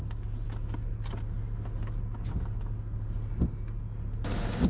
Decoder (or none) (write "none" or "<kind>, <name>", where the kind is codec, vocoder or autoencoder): none